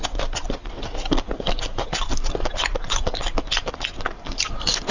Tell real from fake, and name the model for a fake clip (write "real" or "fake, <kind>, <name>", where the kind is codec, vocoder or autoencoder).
real